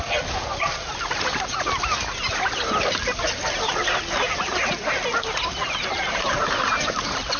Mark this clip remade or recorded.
recorded